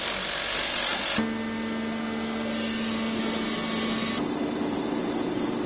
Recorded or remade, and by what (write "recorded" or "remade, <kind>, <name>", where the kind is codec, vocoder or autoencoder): recorded